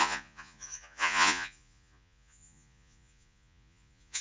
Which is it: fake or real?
fake